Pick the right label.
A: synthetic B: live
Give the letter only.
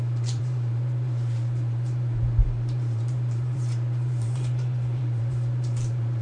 A